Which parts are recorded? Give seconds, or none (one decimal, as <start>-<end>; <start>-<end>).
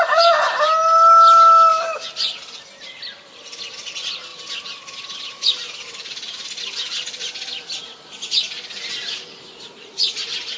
0.0-10.6